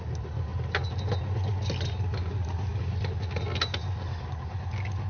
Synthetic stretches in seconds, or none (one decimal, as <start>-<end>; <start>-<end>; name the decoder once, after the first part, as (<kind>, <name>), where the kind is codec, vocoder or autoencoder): none